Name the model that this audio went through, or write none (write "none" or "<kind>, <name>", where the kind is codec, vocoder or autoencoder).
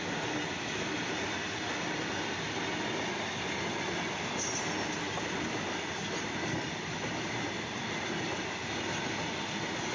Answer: none